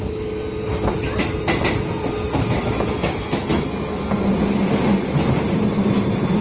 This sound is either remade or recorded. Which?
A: recorded